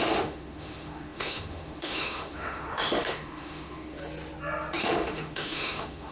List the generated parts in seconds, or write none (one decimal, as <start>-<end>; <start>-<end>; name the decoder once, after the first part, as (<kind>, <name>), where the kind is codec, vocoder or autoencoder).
0.0-4.0 (autoencoder, DAC-VAE); 4.8-6.1